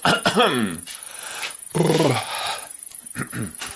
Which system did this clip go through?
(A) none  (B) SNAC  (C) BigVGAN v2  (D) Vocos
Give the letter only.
C